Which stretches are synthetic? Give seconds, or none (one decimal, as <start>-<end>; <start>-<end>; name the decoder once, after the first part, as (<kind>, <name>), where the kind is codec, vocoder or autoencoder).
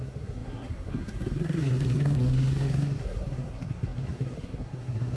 0.0-5.2 (codec, SNAC)